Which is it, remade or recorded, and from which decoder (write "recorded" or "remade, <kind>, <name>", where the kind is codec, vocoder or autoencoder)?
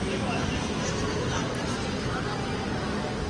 recorded